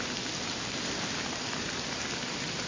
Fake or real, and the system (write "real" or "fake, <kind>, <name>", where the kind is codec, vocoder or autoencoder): real